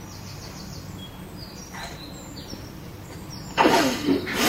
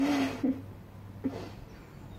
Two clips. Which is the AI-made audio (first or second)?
first